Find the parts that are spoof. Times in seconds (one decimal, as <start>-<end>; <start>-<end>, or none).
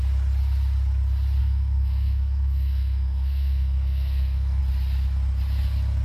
1.4-4.6